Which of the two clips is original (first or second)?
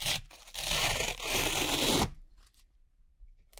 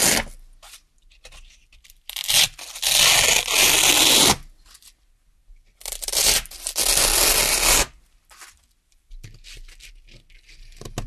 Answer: second